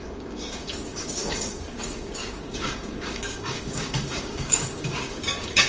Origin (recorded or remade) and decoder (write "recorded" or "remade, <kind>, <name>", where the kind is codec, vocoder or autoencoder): remade, codec, DAC